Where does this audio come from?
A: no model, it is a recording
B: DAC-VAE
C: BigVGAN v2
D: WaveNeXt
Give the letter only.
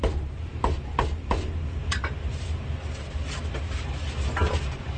A